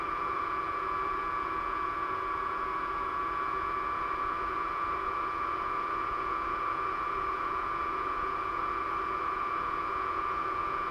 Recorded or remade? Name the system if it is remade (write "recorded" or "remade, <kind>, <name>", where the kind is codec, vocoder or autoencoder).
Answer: remade, vocoder, Vocos